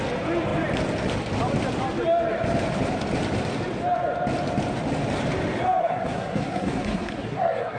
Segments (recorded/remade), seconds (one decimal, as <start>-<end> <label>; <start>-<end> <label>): 0.0-5.8 recorded; 5.8-7.8 remade